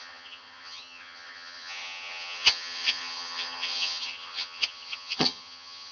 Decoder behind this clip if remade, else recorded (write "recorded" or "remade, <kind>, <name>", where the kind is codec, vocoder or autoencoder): remade, vocoder, HiFi-GAN